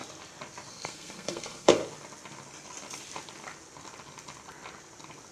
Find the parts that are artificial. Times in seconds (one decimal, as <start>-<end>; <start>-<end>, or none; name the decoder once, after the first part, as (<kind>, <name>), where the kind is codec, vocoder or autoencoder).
0.7-1.8 (codec, SNAC)